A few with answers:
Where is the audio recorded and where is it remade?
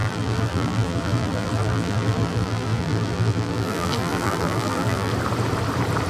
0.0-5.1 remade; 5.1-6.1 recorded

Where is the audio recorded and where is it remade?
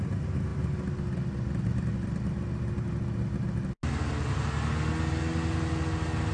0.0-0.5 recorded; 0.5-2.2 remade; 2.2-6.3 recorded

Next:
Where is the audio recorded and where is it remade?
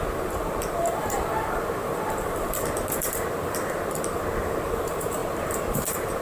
0.0-6.2 remade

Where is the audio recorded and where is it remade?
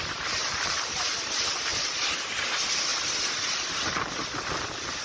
0.0-0.4 recorded; 0.4-0.9 remade; 0.9-5.0 recorded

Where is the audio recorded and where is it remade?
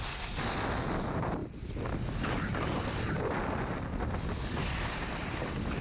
0.0-5.8 recorded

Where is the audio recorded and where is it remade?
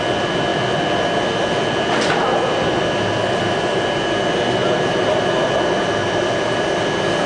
0.0-4.6 recorded; 4.6-5.2 remade; 5.2-7.3 recorded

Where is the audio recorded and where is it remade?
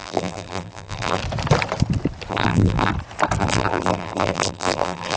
0.0-1.2 remade; 1.2-2.3 recorded; 2.3-2.9 remade; 2.9-3.4 recorded; 3.4-5.2 remade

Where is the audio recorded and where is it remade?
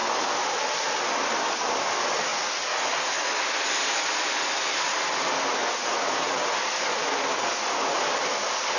0.0-1.7 remade; 1.7-8.8 recorded